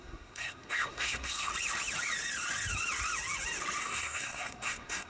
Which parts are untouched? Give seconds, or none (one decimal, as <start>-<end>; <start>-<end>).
1.5-3.8